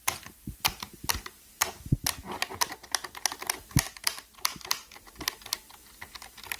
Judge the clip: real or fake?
real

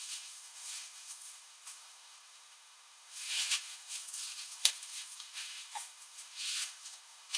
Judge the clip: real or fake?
fake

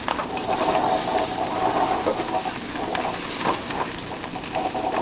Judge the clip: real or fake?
real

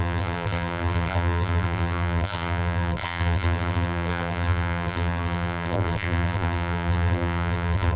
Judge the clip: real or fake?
fake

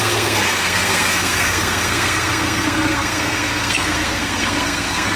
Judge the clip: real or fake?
fake